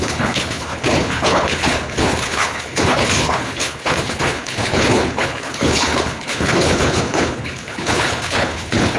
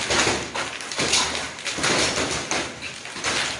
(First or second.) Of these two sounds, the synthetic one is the first